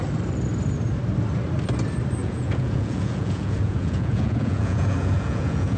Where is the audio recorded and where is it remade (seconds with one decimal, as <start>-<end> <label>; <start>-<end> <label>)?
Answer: 0.0-2.2 recorded; 2.2-5.8 remade

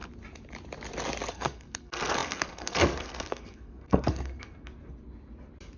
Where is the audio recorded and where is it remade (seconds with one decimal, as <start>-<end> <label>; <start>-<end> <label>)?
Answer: 0.0-1.3 recorded; 1.3-4.7 remade; 4.7-5.8 recorded

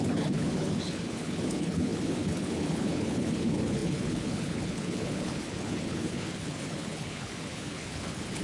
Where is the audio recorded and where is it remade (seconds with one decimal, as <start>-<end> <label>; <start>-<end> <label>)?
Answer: 0.0-8.4 remade

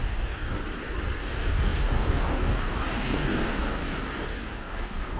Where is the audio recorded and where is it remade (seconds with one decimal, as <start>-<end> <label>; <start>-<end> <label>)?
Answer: 0.0-0.6 remade; 0.6-1.2 recorded; 1.2-5.2 remade

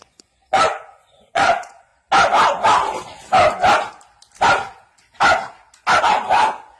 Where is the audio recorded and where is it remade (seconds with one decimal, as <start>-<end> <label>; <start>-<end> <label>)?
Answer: 0.0-1.9 remade; 1.9-6.0 recorded; 6.0-6.8 remade

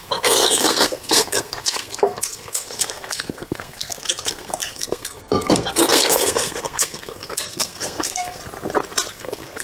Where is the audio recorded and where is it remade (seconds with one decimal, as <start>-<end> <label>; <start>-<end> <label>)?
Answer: 0.0-8.4 remade; 8.4-9.1 recorded; 9.1-9.6 remade

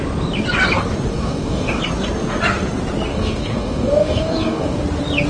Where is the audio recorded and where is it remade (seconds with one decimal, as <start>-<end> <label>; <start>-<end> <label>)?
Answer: 0.0-1.1 recorded; 1.1-1.8 remade; 1.8-3.1 recorded; 3.1-4.8 remade; 4.8-5.3 recorded

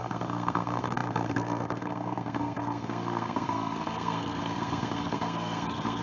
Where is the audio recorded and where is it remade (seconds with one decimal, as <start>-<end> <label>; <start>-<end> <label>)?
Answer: 0.0-6.0 remade